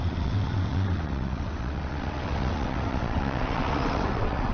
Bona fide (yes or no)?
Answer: no